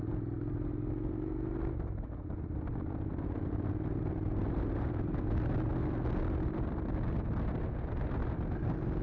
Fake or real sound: real